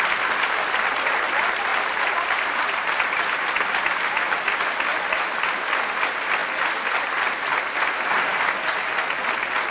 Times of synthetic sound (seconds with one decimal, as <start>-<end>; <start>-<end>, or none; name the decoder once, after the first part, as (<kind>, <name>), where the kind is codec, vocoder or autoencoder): 1.7-3.5 (vocoder, BigVGAN v2); 4.9-5.5